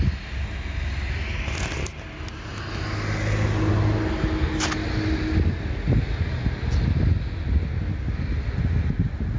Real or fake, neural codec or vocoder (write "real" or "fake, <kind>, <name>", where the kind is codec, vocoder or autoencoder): real